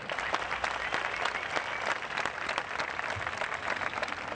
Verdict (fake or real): real